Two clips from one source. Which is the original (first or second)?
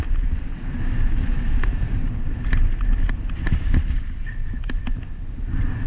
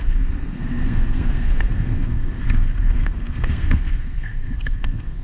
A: first